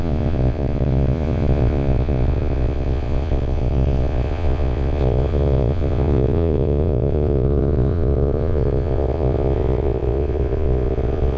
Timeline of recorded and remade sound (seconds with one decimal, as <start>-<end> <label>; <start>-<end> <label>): 0.0-11.4 remade